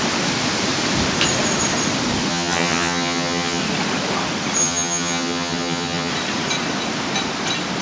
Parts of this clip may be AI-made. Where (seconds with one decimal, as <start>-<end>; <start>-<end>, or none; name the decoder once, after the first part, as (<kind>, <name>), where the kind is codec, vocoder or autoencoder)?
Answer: 2.3-3.6 (vocoder, HiFi-GAN); 4.6-6.1